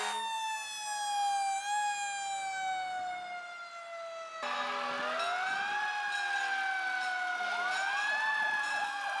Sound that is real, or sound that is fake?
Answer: real